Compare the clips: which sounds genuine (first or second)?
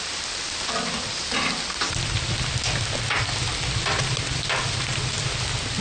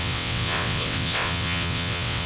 first